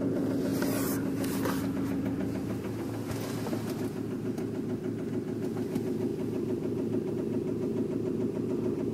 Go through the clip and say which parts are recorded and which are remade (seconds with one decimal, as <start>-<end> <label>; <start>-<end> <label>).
0.0-8.9 recorded

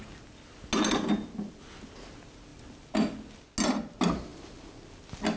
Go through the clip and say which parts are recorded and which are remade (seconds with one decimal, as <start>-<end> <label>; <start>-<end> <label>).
0.0-5.4 recorded

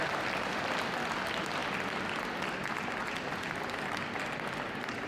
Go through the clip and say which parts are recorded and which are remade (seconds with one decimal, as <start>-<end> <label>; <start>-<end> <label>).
0.0-5.1 recorded

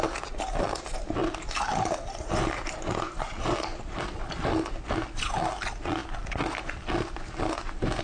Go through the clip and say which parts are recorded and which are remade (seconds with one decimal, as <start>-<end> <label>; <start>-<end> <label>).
0.0-1.2 recorded; 1.2-4.7 remade; 4.7-8.0 recorded

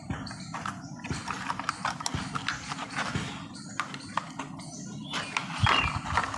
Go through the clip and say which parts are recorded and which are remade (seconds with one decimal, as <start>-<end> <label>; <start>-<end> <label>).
0.0-6.4 recorded